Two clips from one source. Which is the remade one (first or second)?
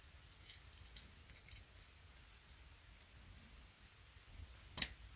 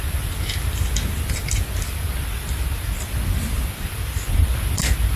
second